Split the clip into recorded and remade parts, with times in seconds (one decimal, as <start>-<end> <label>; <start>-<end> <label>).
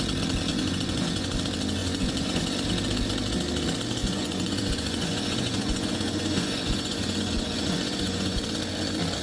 0.0-0.5 recorded; 0.5-1.3 remade; 1.3-1.8 recorded; 1.8-2.4 remade; 2.4-4.0 recorded; 4.0-8.4 remade; 8.4-9.2 recorded